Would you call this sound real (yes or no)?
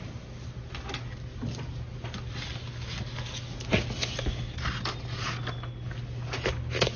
yes